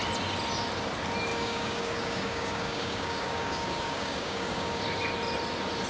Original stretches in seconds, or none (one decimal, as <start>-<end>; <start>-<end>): 0.0-1.3; 4.8-5.9